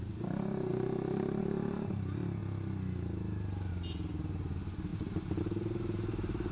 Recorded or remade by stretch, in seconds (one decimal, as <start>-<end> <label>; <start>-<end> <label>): 0.0-0.7 remade; 0.7-1.4 recorded; 1.4-2.4 remade; 2.4-3.7 recorded; 3.7-6.5 remade